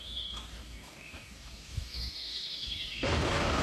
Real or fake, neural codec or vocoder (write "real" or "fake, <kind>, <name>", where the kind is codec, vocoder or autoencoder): fake, codec, DAC